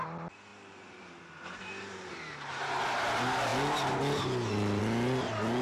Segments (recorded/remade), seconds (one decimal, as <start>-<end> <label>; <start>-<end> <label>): 0.0-0.5 recorded; 0.5-2.1 remade; 2.1-5.6 recorded